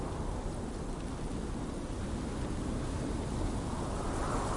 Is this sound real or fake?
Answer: real